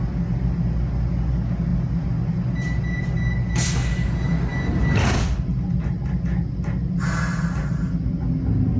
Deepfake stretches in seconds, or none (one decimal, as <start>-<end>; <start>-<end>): none